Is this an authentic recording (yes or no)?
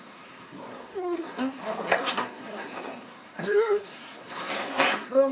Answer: no